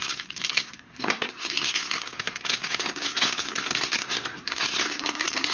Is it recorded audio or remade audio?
remade